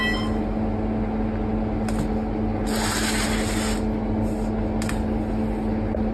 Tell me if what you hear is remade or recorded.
recorded